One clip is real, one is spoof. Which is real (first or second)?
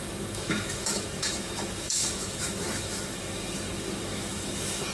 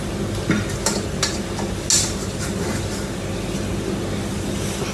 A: second